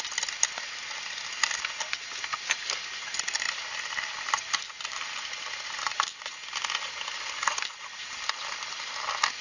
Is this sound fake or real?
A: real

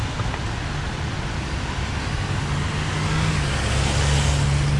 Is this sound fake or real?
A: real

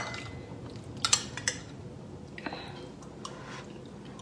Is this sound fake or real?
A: real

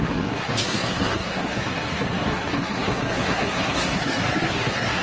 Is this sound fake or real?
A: fake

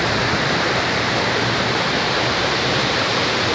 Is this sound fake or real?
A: fake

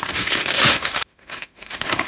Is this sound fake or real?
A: fake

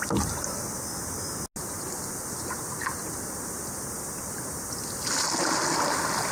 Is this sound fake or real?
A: real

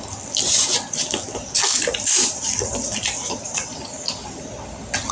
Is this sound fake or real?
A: real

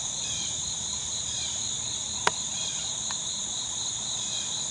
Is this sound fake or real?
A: fake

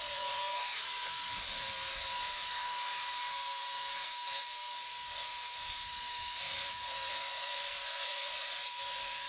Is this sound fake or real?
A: fake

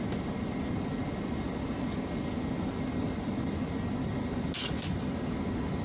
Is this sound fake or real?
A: real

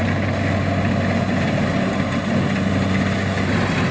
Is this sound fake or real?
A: real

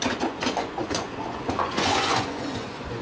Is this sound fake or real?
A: fake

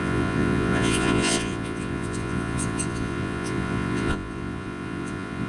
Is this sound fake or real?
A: fake